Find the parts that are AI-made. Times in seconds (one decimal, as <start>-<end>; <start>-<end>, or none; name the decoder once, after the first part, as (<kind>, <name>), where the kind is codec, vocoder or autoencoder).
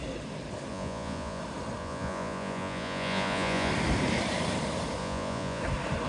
0.7-1.4 (vocoder, Vocos); 1.8-3.7; 5.0-5.6